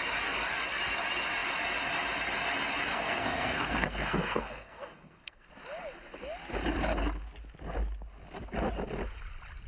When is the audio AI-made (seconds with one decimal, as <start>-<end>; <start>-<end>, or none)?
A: 2.9-5.5